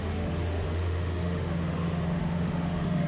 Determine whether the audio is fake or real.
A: fake